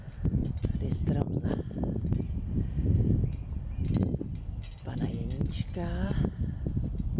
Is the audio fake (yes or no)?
no